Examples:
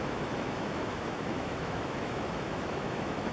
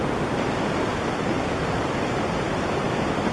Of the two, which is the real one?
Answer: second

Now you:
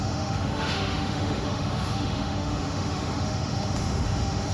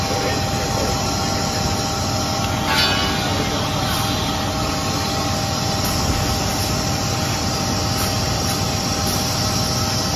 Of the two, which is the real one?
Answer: second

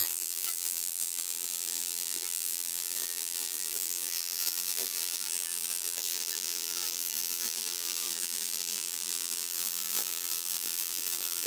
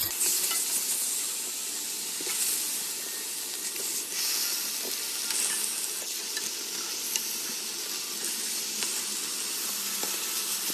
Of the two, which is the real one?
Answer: second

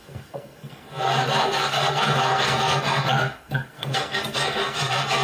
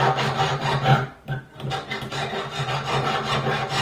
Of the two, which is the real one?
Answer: second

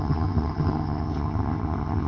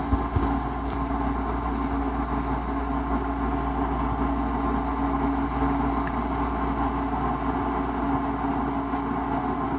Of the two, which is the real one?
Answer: second